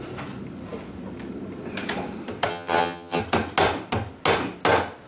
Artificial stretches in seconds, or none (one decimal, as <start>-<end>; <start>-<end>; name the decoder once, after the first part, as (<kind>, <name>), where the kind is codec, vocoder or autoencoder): 2.5-3.2 (vocoder, HiFi-GAN)